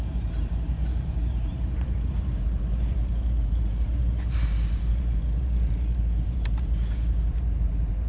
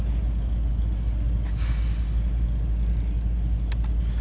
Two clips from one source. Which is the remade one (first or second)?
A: first